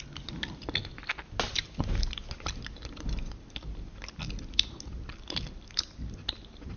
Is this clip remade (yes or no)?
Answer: no